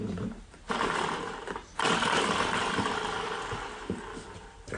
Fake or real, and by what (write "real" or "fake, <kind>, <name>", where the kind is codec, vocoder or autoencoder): fake, vocoder, BigVGAN v2